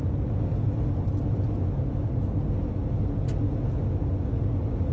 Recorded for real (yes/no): yes